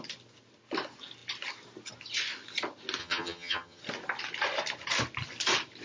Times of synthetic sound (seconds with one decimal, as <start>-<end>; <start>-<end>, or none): 3.0-3.8